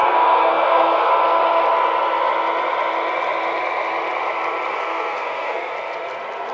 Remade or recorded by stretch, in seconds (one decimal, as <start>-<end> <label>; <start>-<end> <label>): 0.0-1.1 remade; 1.1-4.7 recorded; 4.7-5.7 remade; 5.7-6.5 recorded